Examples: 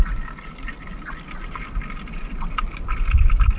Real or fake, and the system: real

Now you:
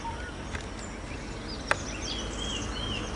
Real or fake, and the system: real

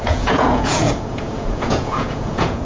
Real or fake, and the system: fake, vocoder, Vocos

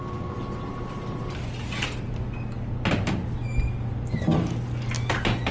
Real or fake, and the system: real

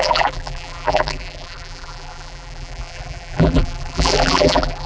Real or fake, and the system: fake, vocoder, BigVGAN v2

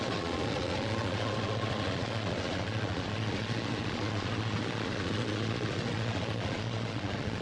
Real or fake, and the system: fake, vocoder, Vocos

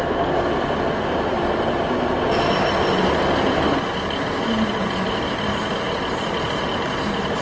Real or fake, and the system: real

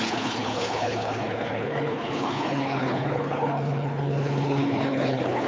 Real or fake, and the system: fake, codec, HILCodec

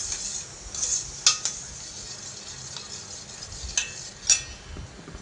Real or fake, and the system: real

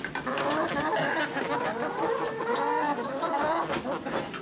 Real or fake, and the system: real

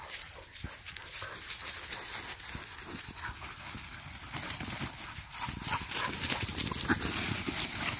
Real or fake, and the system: real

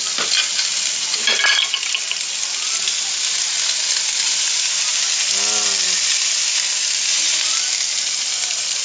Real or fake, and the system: real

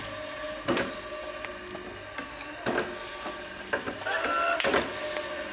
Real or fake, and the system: real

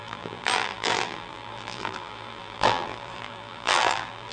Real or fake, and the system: fake, vocoder, BigVGAN v2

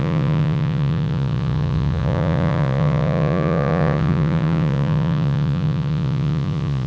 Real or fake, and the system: fake, vocoder, Vocos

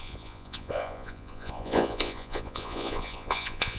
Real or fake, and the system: fake, vocoder, Vocos